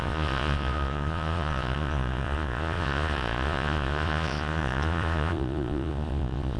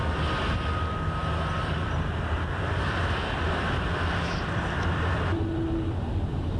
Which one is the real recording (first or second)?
second